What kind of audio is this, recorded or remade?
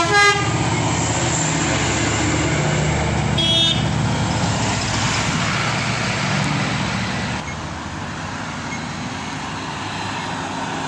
recorded